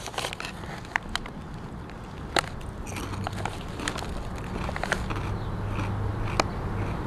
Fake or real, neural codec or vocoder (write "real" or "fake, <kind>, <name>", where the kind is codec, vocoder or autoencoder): real